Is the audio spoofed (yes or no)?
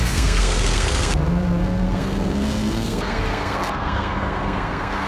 yes